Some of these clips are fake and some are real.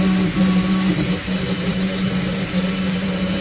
fake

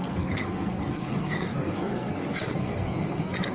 fake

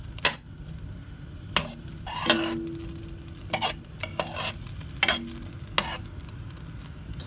real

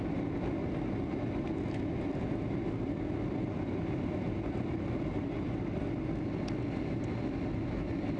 real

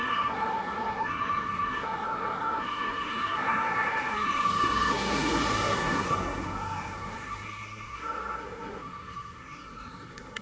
fake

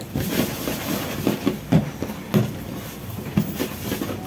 fake